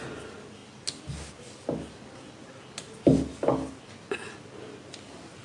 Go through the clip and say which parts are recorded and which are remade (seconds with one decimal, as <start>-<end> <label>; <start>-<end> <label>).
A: 0.0-5.4 recorded